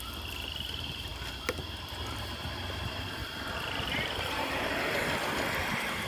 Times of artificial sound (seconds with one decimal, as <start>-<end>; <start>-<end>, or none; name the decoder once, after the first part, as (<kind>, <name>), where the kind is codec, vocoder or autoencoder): 1.1-1.9 (vocoder, BigVGAN v2); 3.2-4.6